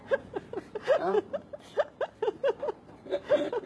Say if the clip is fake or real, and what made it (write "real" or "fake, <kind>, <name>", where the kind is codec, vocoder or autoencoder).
fake, vocoder, BigVGAN v2